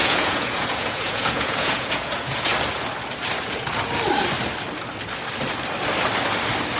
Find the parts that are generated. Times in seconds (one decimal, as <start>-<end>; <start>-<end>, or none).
0.0-2.5